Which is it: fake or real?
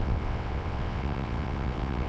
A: fake